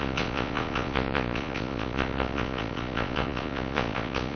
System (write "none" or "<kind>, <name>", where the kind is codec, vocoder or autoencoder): vocoder, Vocos